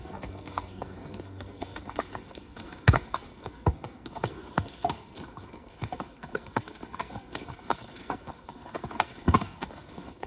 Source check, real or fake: fake